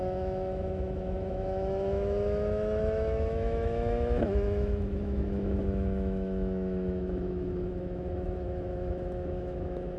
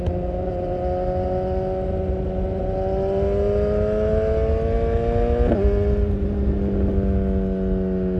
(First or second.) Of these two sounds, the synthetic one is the first